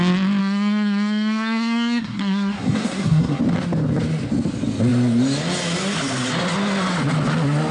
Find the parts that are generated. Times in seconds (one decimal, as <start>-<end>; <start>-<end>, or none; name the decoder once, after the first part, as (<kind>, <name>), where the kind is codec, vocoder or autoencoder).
0.4-3.4 (codec, SNAC)